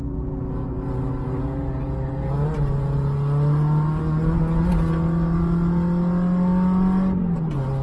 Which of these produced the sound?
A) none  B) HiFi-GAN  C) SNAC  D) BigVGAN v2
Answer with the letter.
A